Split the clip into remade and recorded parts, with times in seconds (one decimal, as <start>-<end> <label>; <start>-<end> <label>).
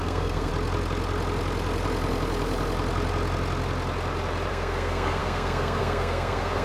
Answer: 0.0-0.5 remade; 0.5-4.5 recorded; 4.5-6.6 remade